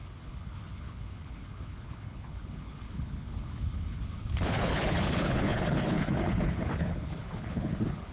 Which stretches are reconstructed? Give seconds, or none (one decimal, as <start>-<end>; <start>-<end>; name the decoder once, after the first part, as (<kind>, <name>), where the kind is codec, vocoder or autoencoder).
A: 0.0-8.1 (codec, HILCodec)